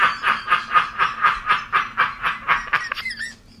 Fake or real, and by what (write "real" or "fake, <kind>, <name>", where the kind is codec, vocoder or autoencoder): real